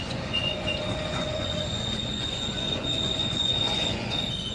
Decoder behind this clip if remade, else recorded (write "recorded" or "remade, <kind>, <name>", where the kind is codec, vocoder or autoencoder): remade, vocoder, Vocos